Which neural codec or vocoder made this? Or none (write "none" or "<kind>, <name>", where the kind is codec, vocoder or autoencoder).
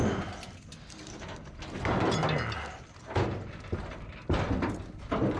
none